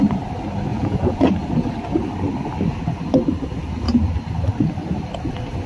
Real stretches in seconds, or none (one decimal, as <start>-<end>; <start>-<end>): 0.0-0.7; 1.3-5.7